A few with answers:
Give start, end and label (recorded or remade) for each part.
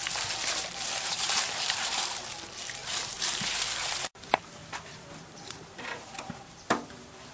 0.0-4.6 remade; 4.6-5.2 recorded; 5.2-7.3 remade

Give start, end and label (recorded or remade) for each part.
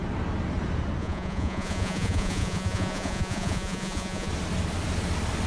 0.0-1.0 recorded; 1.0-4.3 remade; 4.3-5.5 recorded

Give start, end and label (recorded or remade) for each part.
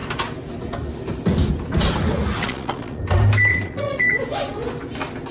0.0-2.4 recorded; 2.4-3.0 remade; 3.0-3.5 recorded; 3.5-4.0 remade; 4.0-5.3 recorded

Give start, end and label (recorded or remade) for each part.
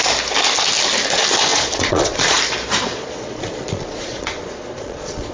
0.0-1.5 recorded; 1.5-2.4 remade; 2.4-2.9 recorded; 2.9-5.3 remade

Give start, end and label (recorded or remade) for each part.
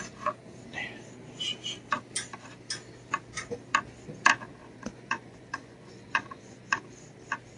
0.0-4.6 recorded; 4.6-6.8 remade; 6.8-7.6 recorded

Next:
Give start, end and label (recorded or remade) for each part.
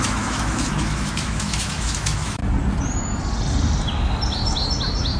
0.0-2.4 remade; 2.4-5.2 recorded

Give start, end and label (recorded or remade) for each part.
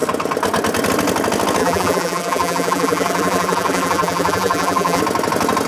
0.0-1.6 recorded; 1.6-5.0 remade; 5.0-5.7 recorded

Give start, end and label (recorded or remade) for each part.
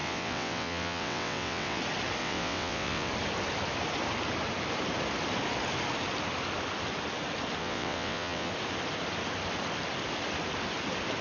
0.0-1.8 remade; 1.8-2.2 recorded; 2.2-3.1 remade; 3.1-7.6 recorded; 7.6-8.5 remade; 8.5-11.2 recorded